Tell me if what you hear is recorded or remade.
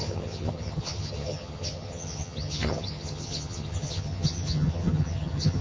remade